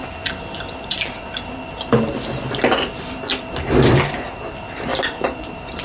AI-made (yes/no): no